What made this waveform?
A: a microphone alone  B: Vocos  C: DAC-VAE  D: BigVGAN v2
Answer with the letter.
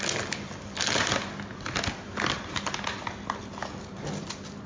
A